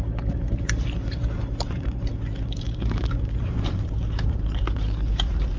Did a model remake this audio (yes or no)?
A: yes